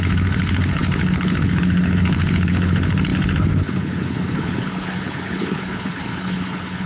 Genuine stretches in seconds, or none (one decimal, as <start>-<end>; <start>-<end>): none